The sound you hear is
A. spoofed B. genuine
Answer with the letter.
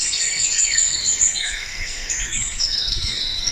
A